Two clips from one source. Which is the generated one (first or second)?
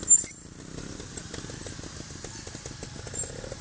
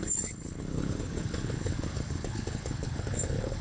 second